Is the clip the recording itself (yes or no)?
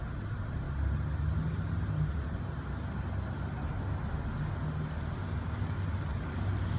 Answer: yes